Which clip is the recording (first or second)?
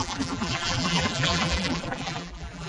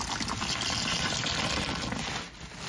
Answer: second